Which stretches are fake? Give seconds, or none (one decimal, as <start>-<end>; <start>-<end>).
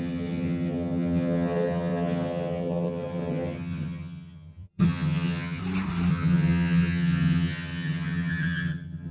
0.0-5.6; 6.1-9.1